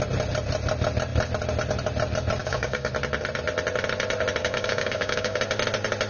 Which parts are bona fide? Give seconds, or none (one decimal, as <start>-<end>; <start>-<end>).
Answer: 0.0-2.4; 2.9-4.4; 5.4-6.1